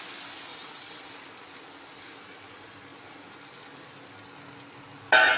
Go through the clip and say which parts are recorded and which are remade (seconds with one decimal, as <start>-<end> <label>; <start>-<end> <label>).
0.0-0.5 recorded; 0.5-1.1 remade; 1.1-5.4 recorded